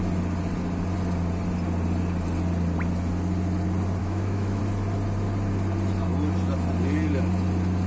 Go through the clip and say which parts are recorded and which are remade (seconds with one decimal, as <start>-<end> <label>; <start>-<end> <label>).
0.0-4.0 recorded; 4.0-4.6 remade; 4.6-7.9 recorded